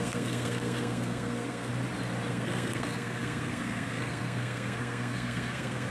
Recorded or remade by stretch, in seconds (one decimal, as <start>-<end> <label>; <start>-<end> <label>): 0.0-1.7 remade; 1.7-2.3 recorded; 2.3-5.9 remade